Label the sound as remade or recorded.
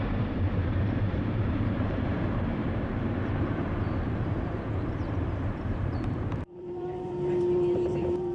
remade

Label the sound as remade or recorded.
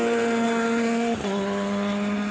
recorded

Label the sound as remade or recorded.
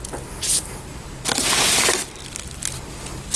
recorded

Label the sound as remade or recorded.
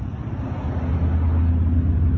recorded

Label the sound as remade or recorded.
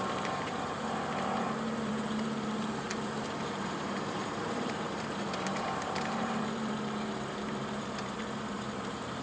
remade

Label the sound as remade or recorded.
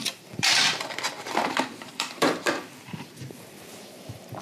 remade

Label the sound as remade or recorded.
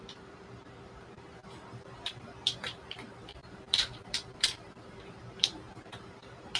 remade